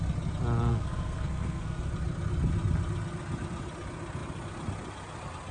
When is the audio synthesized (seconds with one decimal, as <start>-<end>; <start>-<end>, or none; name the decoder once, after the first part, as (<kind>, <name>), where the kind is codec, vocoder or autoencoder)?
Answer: 0.7-1.8 (codec, SNAC)